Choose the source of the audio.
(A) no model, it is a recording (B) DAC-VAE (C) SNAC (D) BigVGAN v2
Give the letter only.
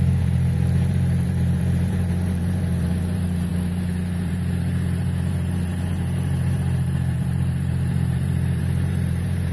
D